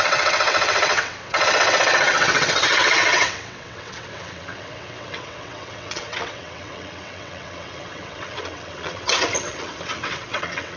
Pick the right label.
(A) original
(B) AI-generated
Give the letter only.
B